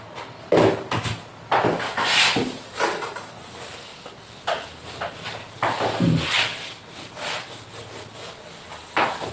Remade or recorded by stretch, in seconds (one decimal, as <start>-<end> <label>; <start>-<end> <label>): 0.0-9.3 recorded